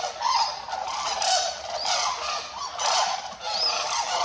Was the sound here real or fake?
fake